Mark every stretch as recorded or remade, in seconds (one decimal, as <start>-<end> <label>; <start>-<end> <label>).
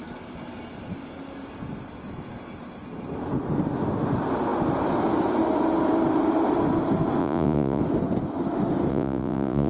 0.0-7.2 recorded; 7.2-7.8 remade; 7.8-8.9 recorded; 8.9-9.7 remade